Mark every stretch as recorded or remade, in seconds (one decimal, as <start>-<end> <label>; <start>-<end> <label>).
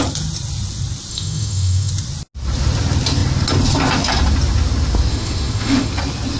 0.0-1.1 recorded; 1.1-1.9 remade; 1.9-5.1 recorded; 5.1-5.9 remade; 5.9-6.4 recorded